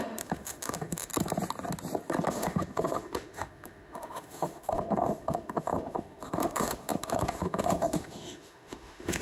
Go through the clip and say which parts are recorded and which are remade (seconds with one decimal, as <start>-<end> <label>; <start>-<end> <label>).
0.0-1.1 remade; 1.1-2.3 recorded; 2.3-9.2 remade